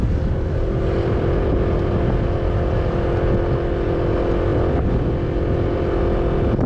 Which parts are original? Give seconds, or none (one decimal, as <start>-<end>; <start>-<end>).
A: 0.0-4.5; 5.1-6.7